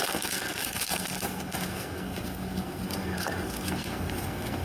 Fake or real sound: fake